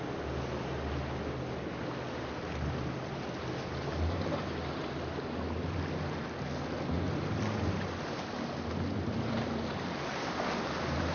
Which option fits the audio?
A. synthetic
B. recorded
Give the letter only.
B